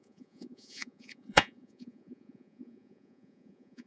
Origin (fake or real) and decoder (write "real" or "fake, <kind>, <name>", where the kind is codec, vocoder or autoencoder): fake, vocoder, Vocos